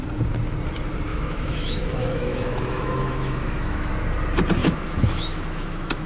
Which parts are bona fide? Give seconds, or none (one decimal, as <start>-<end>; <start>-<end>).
0.0-1.1; 3.9-4.6